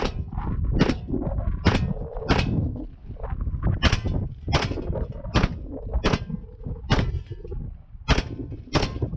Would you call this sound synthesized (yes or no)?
no